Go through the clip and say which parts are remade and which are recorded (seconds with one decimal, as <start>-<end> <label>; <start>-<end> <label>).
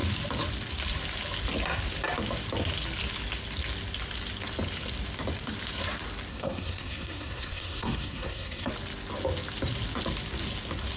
0.0-6.3 recorded; 6.3-8.7 remade; 8.7-11.0 recorded